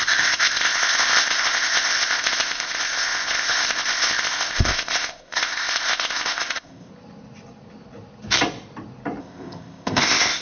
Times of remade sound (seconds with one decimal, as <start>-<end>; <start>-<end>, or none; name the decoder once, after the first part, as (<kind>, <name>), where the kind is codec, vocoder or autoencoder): 0.0-6.9 (codec, ZipCodec); 9.2-10.4